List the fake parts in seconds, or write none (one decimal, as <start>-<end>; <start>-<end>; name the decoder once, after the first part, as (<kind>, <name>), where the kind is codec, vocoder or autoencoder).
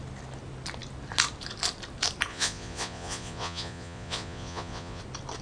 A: 2.3-5.0 (vocoder, Vocos)